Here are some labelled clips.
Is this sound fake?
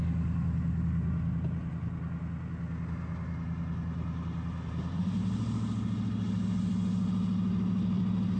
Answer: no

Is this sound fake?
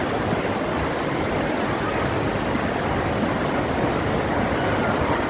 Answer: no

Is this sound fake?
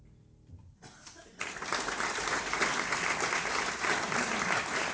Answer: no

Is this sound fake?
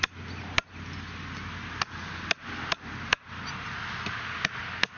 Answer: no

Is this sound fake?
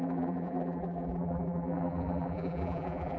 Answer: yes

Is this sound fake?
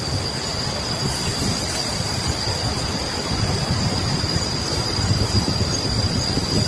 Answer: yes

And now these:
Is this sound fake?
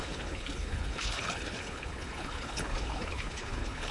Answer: yes